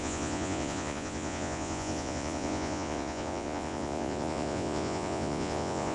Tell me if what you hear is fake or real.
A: fake